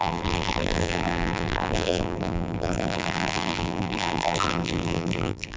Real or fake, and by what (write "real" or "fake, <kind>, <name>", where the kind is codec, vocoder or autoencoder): fake, vocoder, BigVGAN v2